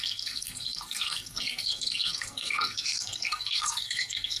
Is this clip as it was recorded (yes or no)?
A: no